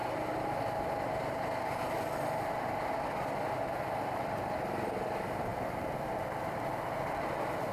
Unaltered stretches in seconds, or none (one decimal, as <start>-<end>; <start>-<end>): 0.0-7.7